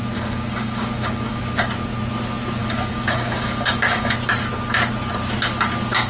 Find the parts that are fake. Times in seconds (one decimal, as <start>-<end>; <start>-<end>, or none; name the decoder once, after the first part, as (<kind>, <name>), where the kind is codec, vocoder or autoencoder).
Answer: 0.0-1.4 (codec, DAC); 2.6-4.1